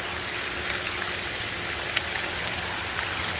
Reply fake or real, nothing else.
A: real